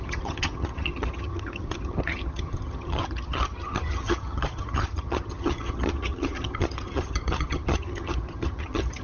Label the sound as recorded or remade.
remade